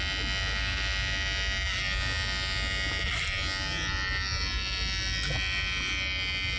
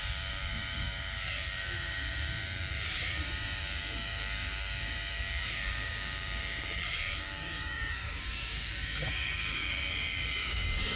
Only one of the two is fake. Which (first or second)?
second